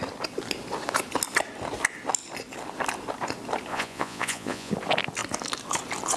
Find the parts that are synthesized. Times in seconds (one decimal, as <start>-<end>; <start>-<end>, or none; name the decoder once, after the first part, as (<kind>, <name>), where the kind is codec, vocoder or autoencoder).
3.7-4.7 (vocoder, Vocos)